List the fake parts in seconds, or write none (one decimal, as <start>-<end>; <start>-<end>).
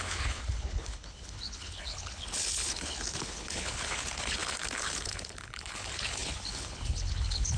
0.0-7.6